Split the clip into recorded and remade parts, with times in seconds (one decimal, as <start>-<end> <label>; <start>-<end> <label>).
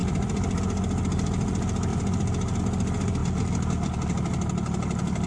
0.0-0.6 remade; 0.6-1.9 recorded; 1.9-2.6 remade; 2.6-5.3 recorded